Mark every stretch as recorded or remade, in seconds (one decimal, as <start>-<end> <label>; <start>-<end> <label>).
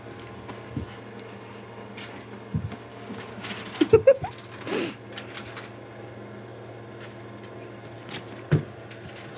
0.0-2.9 recorded; 2.9-3.5 remade; 3.5-9.4 recorded